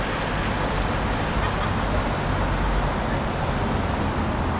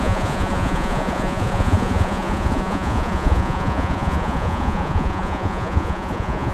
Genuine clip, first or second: first